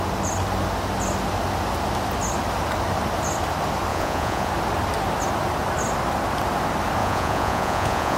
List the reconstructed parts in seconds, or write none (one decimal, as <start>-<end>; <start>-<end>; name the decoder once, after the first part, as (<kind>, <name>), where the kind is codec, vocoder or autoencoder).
3.9-4.5 (vocoder, Vocos); 7.0-8.2